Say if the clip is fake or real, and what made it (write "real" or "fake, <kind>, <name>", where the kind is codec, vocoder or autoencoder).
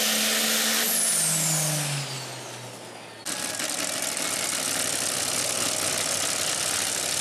real